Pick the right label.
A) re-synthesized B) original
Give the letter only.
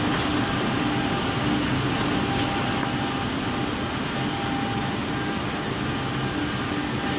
B